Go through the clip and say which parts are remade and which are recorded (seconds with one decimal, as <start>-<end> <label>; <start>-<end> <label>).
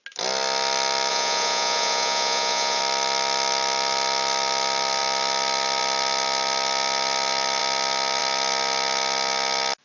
0.0-1.1 recorded; 1.1-2.8 remade; 2.8-9.8 recorded